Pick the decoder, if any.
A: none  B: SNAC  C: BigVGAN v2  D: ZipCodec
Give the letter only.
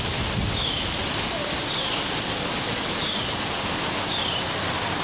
A